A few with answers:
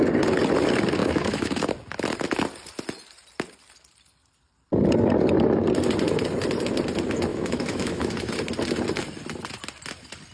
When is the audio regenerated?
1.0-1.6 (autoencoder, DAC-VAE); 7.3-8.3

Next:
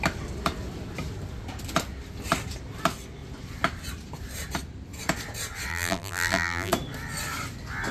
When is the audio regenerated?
5.7-6.7 (vocoder, BigVGAN v2)

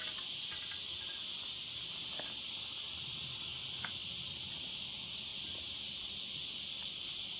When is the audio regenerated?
none

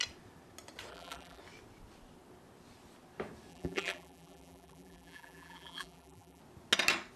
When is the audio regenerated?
0.9-1.4 (vocoder, BigVGAN v2); 3.5-6.4

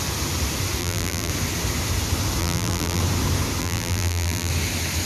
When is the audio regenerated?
0.8-1.3 (vocoder, BigVGAN v2); 2.4-3.0; 3.6-4.5